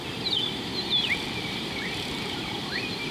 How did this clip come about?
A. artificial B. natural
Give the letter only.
A